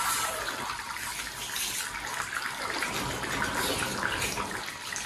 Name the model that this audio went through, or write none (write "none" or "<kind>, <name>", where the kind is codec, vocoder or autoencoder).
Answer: none